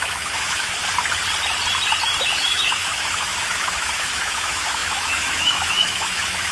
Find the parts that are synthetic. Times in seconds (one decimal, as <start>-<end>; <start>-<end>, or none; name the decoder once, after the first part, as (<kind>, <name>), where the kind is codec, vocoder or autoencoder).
0.0-0.8 (autoencoder, DAC-VAE); 2.3-6.5